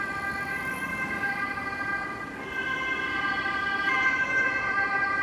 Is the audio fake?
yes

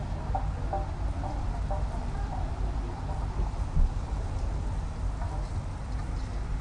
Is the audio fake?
no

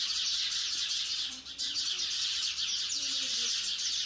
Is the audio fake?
yes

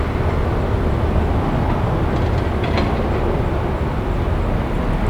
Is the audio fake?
no